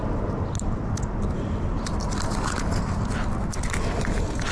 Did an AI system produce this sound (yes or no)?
no